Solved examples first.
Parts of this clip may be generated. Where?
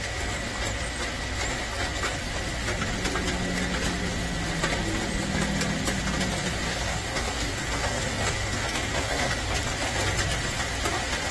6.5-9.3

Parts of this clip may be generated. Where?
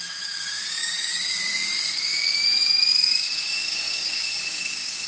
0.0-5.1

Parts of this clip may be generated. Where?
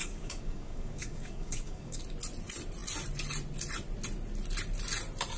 0.0-2.0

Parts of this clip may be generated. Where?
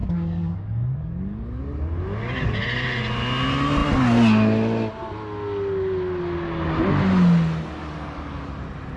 0.0-1.6; 7.8-8.5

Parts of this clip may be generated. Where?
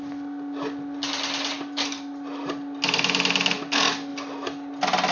none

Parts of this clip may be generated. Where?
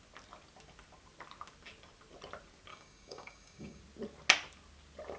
2.7-3.8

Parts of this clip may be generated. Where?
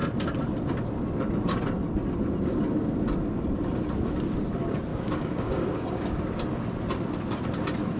4.9-6.2